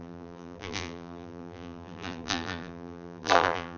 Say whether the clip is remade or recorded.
remade